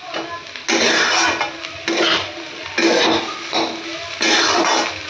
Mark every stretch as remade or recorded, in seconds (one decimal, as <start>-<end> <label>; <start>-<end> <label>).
0.0-5.1 recorded